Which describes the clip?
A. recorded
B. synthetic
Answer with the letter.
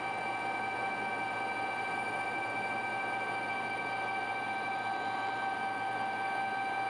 A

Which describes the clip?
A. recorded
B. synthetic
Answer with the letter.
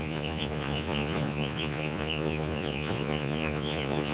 B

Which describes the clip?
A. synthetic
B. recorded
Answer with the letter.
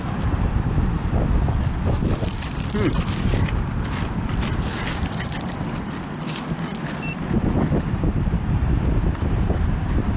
B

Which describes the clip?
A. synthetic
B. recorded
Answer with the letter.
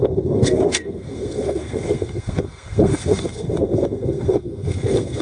A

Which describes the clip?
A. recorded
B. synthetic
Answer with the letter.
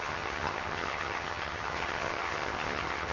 B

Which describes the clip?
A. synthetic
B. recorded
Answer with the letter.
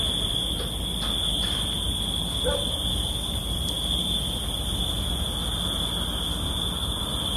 B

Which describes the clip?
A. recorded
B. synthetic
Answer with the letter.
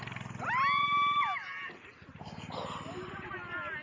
A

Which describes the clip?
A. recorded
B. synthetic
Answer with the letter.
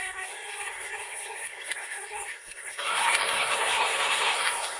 B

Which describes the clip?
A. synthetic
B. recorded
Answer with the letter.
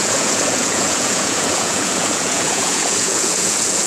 A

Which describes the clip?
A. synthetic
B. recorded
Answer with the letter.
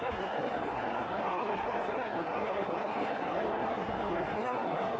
A